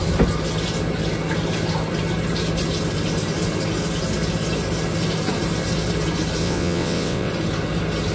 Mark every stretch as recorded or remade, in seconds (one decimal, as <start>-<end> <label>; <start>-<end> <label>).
0.0-6.4 recorded; 6.4-7.3 remade; 7.3-8.1 recorded